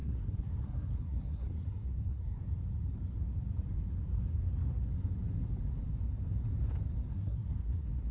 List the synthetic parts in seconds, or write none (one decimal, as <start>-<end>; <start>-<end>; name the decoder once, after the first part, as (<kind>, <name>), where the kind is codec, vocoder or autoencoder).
0.0-2.4 (codec, SNAC); 7.1-8.1